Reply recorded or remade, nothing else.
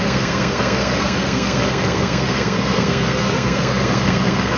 remade